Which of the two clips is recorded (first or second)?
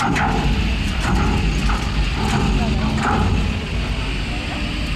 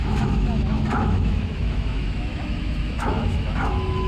first